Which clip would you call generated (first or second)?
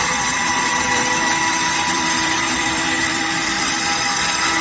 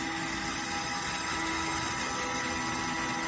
first